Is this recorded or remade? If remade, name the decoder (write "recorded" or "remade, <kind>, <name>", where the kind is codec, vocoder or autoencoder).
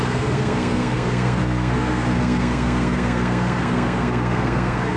remade, codec, SNAC